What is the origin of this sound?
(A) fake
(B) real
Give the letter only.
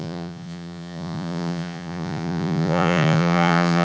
A